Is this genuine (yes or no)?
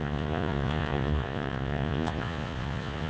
no